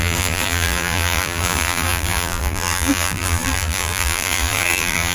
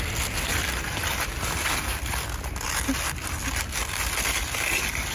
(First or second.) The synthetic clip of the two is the first